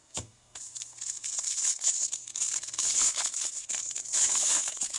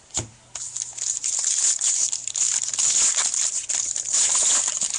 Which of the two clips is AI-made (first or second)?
first